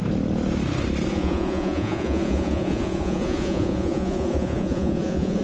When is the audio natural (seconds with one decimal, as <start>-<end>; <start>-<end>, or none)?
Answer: 0.0-1.1